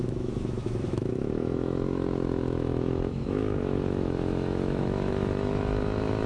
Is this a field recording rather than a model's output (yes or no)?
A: no